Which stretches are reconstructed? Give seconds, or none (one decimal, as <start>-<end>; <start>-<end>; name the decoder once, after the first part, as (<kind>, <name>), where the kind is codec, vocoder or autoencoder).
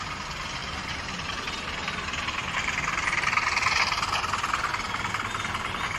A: 0.6-1.3 (vocoder, BigVGAN v2)